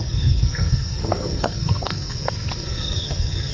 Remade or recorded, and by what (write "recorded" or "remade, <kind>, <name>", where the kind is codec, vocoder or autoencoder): remade, codec, SNAC